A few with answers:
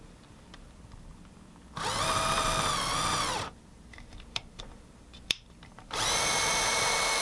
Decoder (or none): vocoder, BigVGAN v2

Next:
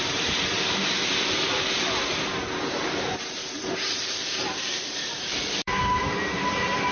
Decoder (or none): vocoder, BigVGAN v2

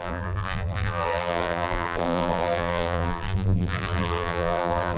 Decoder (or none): vocoder, BigVGAN v2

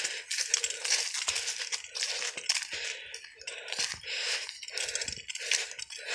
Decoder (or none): none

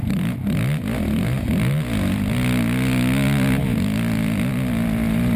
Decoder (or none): none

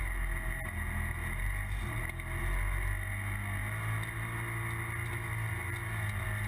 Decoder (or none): none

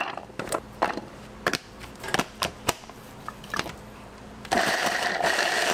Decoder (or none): vocoder, BigVGAN v2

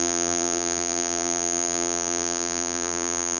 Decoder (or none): vocoder, BigVGAN v2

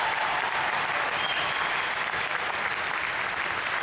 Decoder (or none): vocoder, BigVGAN v2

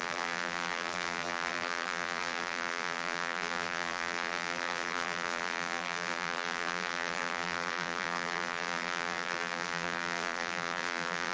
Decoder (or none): vocoder, BigVGAN v2